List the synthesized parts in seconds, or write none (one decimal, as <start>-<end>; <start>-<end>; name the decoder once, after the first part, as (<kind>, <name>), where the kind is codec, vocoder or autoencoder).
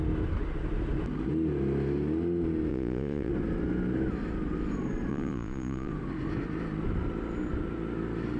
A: 2.7-3.3 (vocoder, Vocos); 5.1-5.9